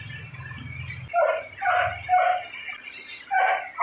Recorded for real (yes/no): yes